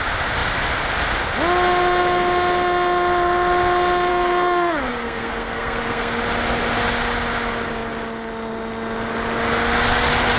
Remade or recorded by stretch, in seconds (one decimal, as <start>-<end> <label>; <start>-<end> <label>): 0.0-4.1 recorded; 4.1-6.2 remade; 6.2-10.4 recorded